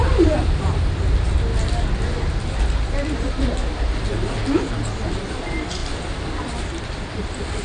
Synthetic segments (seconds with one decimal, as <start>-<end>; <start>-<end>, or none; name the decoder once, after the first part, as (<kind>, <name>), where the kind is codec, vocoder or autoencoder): none